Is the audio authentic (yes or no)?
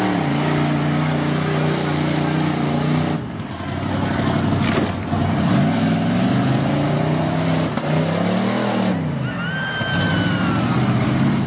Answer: yes